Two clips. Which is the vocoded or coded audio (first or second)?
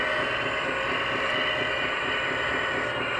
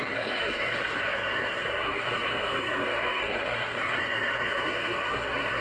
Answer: second